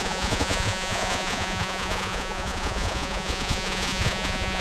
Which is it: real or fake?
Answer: fake